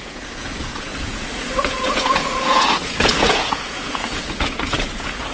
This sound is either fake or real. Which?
fake